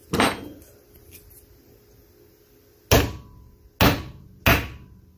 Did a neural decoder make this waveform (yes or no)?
no